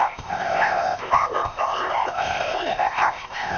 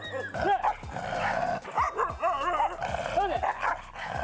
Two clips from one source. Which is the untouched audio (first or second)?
second